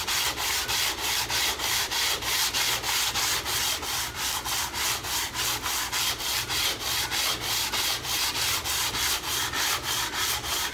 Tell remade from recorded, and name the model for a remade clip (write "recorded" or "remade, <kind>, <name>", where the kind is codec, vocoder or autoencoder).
remade, vocoder, BigVGAN v2